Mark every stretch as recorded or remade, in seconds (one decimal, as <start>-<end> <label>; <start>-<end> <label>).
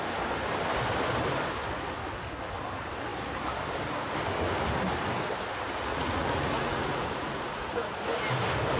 0.0-5.9 recorded; 5.9-7.9 remade; 7.9-8.8 recorded